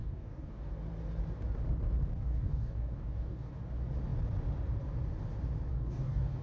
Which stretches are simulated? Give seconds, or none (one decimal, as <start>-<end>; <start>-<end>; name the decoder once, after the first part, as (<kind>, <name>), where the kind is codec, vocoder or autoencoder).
0.0-0.7 (codec, DAC); 2.1-3.5; 5.7-6.4